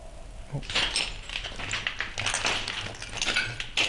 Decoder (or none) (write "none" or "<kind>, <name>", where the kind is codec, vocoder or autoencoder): none